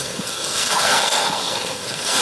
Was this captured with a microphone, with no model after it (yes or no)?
no